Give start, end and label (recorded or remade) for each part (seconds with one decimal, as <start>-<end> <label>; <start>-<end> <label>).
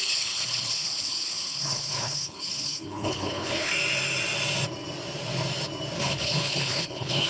0.0-3.7 remade; 3.7-6.0 recorded; 6.0-7.3 remade